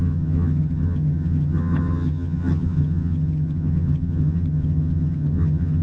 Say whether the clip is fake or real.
fake